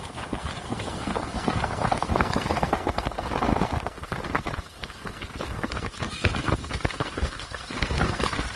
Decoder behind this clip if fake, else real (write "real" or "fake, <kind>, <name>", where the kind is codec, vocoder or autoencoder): fake, codec, SNAC